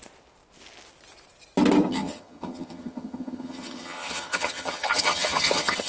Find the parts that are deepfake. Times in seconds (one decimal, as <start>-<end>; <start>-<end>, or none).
1.9-5.9